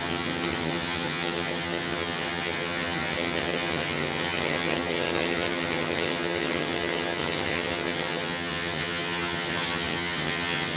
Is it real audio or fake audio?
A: fake